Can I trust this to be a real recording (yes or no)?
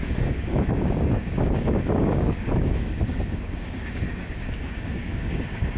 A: no